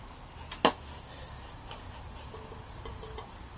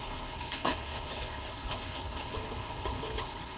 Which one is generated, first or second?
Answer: second